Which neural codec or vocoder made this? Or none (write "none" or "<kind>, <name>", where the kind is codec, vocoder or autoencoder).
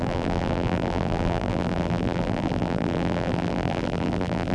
vocoder, BigVGAN v2